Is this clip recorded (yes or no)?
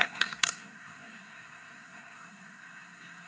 no